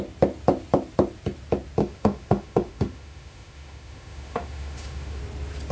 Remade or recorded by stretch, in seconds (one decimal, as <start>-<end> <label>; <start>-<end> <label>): 0.0-1.8 recorded; 1.8-5.2 remade; 5.2-5.7 recorded